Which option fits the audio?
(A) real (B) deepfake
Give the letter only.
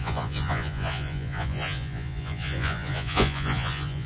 B